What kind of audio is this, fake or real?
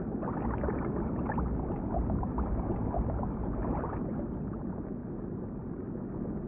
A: real